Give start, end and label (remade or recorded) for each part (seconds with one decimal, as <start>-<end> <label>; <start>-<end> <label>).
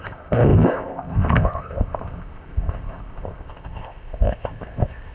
0.0-5.1 remade